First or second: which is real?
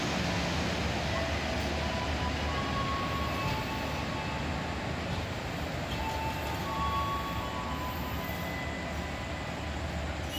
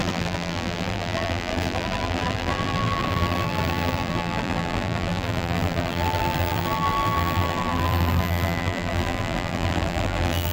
first